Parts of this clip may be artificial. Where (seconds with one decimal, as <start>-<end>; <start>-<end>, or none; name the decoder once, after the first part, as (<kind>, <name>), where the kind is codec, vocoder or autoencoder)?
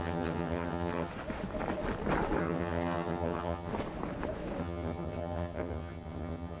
0.0-1.1 (vocoder, HiFi-GAN); 2.4-3.7; 4.6-6.6